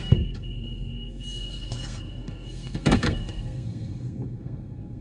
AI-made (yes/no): yes